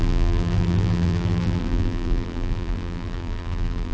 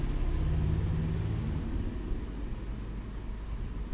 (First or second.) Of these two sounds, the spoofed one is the first